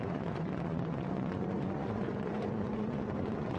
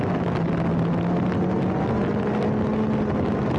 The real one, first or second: second